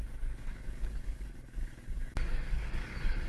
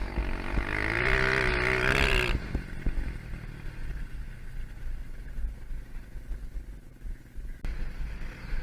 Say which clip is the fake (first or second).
first